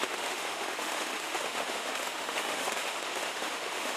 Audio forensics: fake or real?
fake